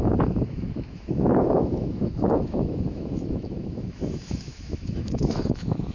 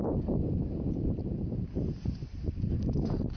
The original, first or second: second